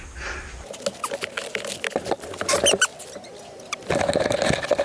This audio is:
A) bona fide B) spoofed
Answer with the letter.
A